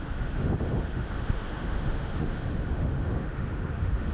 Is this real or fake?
fake